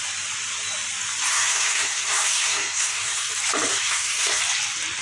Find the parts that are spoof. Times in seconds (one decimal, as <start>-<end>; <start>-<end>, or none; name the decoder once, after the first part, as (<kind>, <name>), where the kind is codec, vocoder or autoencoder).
1.3-3.3 (codec, SNAC); 3.7-4.4